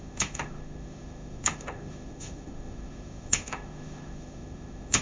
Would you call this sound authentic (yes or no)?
no